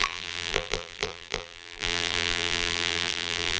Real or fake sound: fake